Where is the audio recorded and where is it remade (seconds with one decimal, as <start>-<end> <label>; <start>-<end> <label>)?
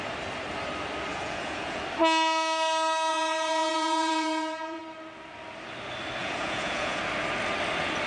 0.0-1.1 recorded; 1.1-1.8 remade; 1.8-3.1 recorded; 3.1-4.8 remade; 4.8-6.2 recorded; 6.2-7.0 remade; 7.0-8.1 recorded